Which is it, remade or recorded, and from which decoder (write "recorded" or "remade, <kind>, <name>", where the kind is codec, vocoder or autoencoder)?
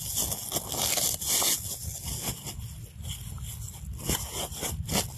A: recorded